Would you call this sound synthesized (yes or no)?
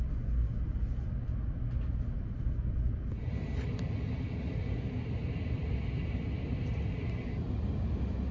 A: no